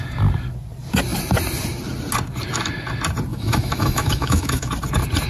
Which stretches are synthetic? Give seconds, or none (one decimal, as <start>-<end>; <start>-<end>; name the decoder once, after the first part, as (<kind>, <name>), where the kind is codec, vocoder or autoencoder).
3.3-4.7 (autoencoder, DAC-VAE)